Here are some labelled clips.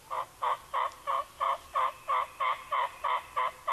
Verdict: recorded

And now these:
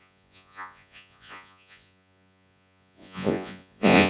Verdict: remade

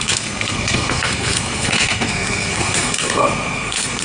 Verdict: remade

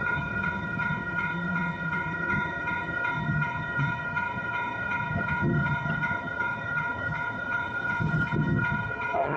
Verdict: remade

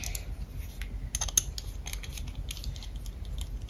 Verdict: recorded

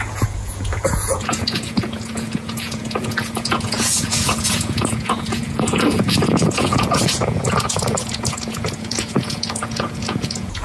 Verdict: remade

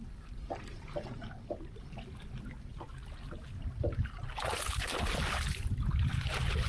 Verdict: recorded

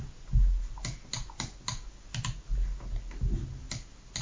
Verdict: recorded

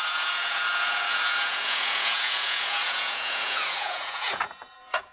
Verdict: remade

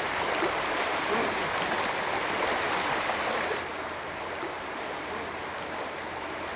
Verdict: recorded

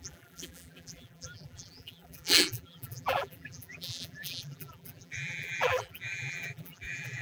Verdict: remade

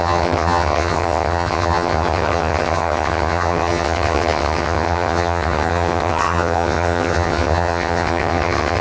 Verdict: remade